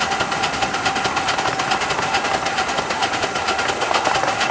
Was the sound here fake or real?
real